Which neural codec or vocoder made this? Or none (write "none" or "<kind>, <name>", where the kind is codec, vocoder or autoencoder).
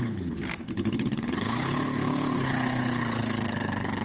codec, HILCodec